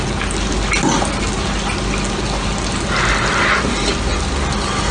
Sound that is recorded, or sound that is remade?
recorded